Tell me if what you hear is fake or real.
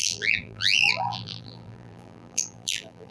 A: fake